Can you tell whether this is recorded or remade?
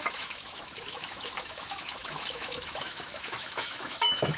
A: remade